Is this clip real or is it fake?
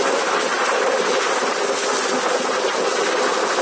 real